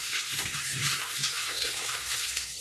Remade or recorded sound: remade